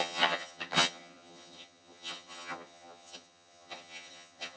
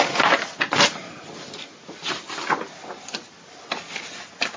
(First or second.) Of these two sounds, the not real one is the first